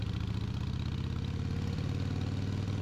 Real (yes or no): yes